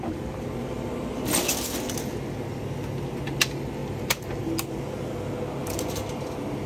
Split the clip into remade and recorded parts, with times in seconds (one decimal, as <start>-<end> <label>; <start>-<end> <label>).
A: 0.0-6.7 recorded